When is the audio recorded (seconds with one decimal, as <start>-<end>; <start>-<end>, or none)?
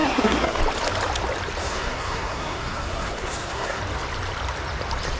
0.6-1.6; 3.8-5.2